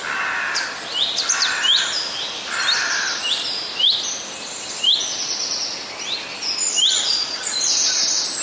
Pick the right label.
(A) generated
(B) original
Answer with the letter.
B